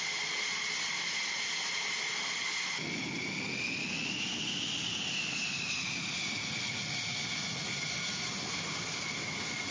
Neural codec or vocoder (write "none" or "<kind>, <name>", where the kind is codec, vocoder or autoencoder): none